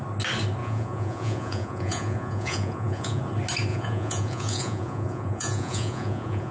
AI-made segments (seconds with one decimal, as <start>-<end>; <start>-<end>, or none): 0.6-3.2; 3.7-6.5